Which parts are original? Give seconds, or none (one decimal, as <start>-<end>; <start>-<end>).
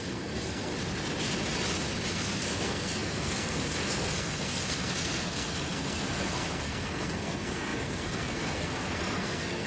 0.7-2.1